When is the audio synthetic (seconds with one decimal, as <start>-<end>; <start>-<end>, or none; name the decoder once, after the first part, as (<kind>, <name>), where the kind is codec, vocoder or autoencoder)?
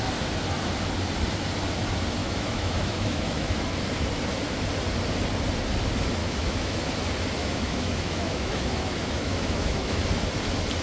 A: 2.2-3.6 (autoencoder, DAC-VAE); 6.2-6.8; 7.4-10.0